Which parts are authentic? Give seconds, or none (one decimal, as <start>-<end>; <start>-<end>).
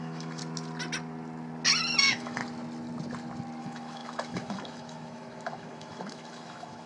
0.4-2.0; 2.4-3.6